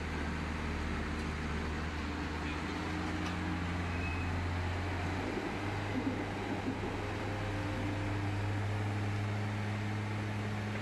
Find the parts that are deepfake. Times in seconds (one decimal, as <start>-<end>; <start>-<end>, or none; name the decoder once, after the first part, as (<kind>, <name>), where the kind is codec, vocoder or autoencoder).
none